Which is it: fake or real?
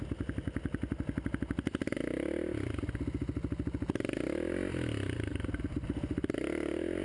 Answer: real